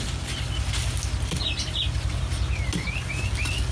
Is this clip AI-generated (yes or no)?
no